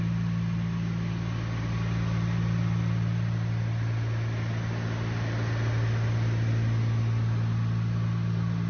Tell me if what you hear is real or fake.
real